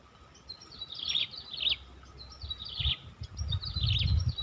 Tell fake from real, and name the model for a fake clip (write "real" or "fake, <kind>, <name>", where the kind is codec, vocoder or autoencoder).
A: real